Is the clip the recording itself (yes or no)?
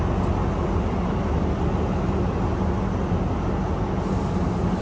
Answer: yes